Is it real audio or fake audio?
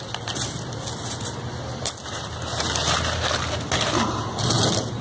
real